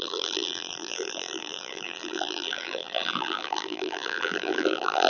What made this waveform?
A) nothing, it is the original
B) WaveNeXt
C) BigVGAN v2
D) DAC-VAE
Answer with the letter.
C